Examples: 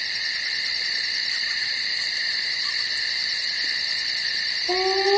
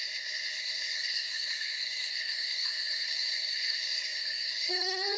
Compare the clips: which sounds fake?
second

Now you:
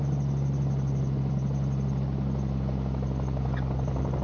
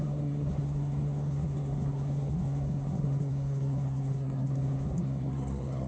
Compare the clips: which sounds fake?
second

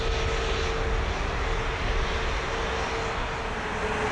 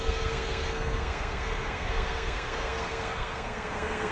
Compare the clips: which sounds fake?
second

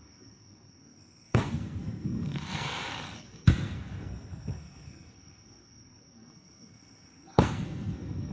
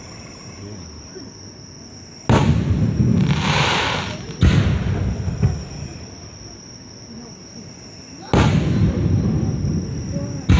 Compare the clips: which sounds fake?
first